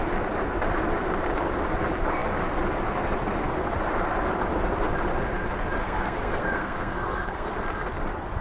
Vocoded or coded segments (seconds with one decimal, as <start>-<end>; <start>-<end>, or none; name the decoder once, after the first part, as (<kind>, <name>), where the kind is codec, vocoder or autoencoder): 5.8-7.5 (codec, SNAC)